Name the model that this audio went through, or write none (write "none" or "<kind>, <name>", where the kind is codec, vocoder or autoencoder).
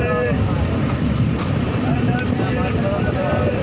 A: vocoder, BigVGAN v2